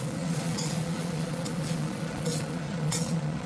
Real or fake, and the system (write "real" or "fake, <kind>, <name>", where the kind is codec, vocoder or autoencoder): fake, vocoder, Vocos